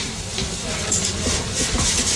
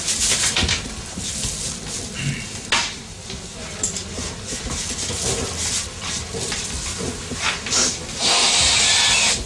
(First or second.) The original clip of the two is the second